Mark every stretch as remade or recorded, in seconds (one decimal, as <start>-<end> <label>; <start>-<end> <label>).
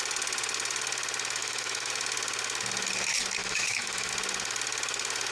0.0-1.4 recorded; 1.4-1.9 remade; 1.9-3.4 recorded; 3.4-4.1 remade; 4.1-5.3 recorded